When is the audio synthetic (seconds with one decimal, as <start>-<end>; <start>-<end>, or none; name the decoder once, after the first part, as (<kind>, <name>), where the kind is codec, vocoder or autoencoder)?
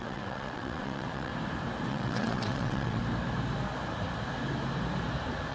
0.0-1.3 (vocoder, WaveNeXt); 1.9-3.0